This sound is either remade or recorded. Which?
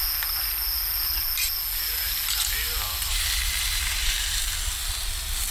recorded